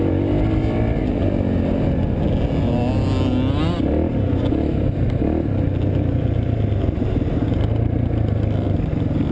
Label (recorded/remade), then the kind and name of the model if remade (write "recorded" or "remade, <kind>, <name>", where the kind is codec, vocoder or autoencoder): recorded